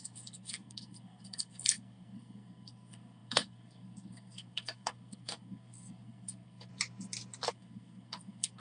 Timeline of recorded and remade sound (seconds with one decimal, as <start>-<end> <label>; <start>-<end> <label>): 0.0-6.7 remade; 6.7-7.5 recorded; 7.5-8.6 remade